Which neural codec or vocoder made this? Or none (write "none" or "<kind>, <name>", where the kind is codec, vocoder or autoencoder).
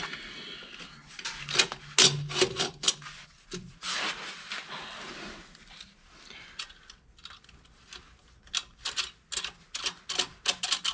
none